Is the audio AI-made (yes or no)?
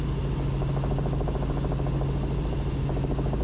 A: no